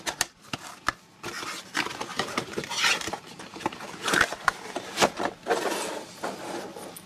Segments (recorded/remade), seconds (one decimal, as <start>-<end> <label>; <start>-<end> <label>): 0.0-2.1 recorded; 2.1-4.8 remade; 4.8-7.1 recorded